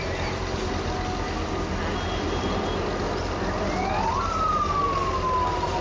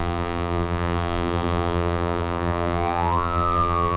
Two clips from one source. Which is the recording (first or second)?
first